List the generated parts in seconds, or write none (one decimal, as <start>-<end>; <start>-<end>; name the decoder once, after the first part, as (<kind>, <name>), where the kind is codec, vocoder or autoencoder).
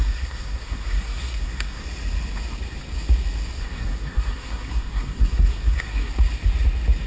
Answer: 0.0-1.8 (codec, SNAC); 3.6-6.1